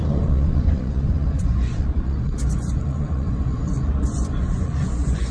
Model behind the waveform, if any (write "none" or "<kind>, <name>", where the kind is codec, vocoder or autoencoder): vocoder, Vocos